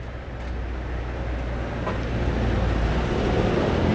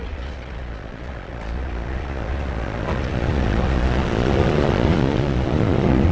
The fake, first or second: second